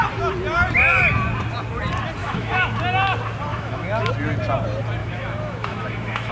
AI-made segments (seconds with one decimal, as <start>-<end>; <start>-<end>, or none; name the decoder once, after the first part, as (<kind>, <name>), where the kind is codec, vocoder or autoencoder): 2.2-2.8 (autoencoder, DAC-VAE); 3.5-4.1; 5.0-6.3